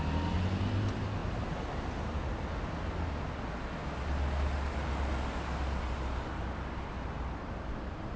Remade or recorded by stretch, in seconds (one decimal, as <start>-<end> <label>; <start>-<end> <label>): 0.0-8.2 recorded